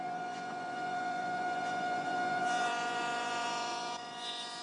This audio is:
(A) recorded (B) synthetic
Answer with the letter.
B